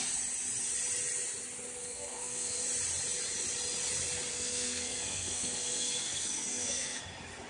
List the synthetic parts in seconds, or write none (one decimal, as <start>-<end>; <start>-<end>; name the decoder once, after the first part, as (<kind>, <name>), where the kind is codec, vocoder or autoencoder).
1.8-2.6 (codec, SNAC); 4.3-7.0